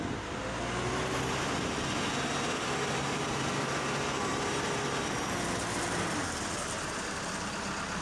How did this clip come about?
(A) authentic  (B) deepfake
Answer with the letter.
A